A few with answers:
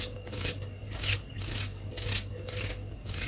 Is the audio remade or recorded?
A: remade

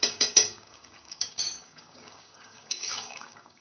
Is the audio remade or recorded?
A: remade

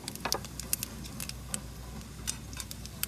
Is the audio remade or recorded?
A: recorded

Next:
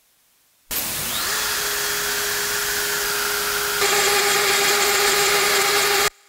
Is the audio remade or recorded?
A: recorded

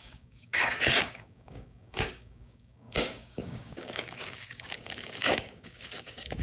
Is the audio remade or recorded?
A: remade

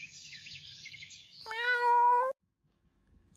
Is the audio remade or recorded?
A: remade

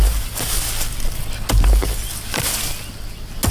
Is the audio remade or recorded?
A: recorded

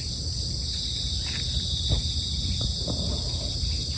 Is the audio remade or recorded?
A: recorded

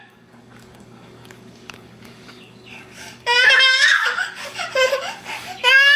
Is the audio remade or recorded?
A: remade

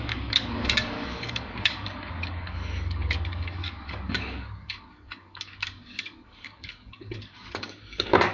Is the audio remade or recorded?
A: remade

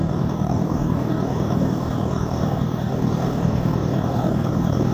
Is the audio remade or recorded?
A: remade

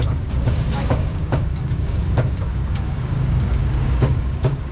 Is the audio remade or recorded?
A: remade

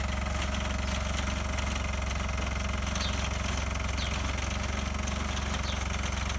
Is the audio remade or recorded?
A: recorded